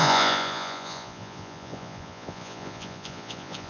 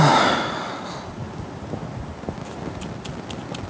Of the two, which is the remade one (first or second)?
first